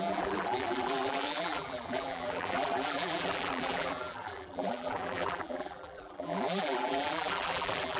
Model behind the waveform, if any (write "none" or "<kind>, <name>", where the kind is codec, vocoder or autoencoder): vocoder, BigVGAN v2